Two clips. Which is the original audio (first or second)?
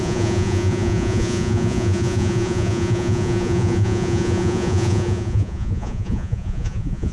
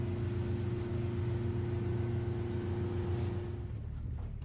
second